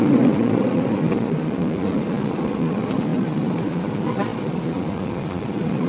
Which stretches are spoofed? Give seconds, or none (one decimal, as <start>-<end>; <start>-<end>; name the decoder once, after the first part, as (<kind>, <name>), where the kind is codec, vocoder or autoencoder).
0.0-5.9 (vocoder, Vocos)